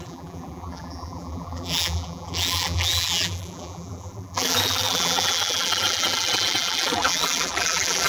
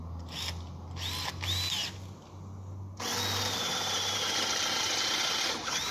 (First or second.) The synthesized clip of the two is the first